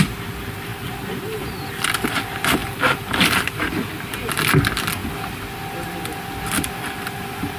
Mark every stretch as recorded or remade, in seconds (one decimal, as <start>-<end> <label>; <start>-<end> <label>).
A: 0.0-2.6 recorded; 2.6-3.9 remade; 3.9-7.6 recorded